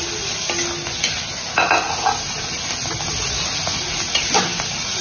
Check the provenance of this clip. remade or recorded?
recorded